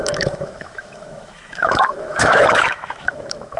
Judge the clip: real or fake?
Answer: fake